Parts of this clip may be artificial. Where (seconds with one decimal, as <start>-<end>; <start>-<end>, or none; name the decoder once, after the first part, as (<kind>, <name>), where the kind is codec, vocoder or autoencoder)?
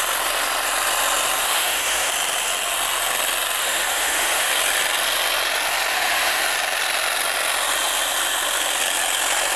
1.4-2.1 (autoencoder, DAC-VAE); 3.6-4.5; 5.9-6.4